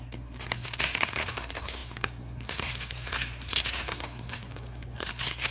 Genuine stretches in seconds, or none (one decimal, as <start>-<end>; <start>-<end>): none